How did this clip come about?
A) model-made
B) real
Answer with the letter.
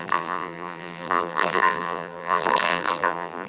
A